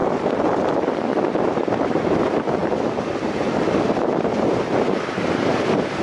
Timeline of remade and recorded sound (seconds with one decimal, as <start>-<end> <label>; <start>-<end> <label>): 0.0-1.3 recorded; 1.3-2.6 remade; 2.6-4.0 recorded; 4.0-6.0 remade